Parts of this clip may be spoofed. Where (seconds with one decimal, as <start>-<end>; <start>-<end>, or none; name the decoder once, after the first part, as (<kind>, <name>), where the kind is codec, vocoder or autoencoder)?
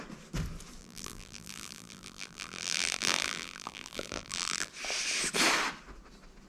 0.8-4.7 (vocoder, BigVGAN v2)